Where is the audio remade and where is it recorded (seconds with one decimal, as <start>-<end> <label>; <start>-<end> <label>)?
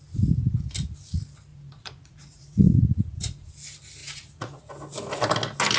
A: 0.0-1.5 recorded; 1.5-3.5 remade; 3.5-4.0 recorded; 4.0-4.6 remade; 4.6-5.8 recorded